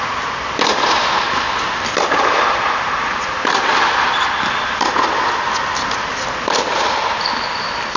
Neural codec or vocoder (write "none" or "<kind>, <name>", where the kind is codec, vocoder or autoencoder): none